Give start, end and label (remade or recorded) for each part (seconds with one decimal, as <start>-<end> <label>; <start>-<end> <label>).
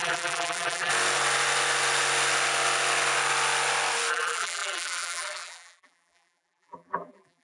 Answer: 0.0-0.9 remade; 0.9-4.1 recorded; 4.1-7.4 remade